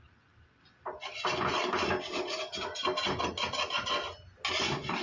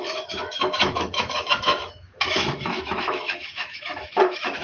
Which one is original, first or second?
first